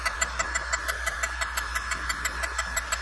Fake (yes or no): no